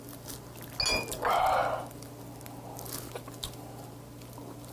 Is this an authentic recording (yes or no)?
yes